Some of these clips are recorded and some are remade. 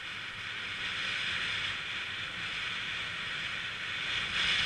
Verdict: recorded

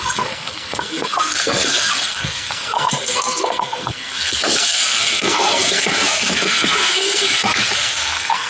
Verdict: remade